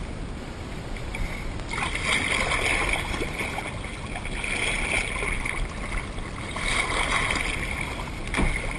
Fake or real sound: real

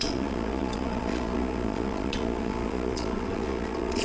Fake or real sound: fake